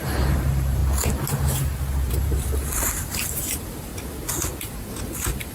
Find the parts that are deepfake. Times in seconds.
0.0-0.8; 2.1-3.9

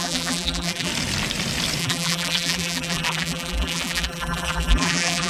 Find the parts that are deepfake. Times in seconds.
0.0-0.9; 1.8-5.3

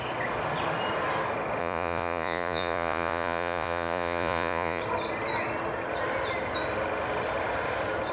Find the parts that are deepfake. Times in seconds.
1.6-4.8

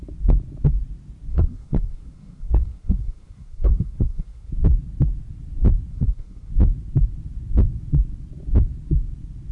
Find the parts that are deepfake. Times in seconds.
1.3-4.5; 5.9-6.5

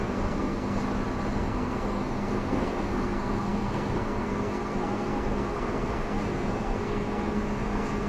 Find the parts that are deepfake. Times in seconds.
0.0-0.8; 1.3-8.1